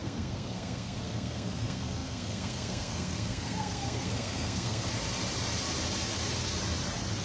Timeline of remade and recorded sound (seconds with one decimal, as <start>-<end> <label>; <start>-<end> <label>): 0.0-4.9 remade; 4.9-7.2 recorded